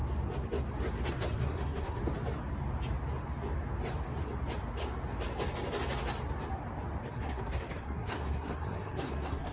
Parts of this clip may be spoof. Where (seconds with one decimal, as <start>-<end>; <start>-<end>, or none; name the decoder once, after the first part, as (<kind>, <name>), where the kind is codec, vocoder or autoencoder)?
1.1-2.0 (codec, SNAC); 7.1-9.5